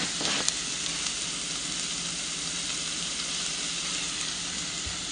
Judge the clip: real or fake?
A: real